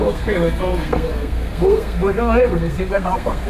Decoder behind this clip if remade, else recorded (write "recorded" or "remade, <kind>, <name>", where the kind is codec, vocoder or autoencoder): remade, codec, SNAC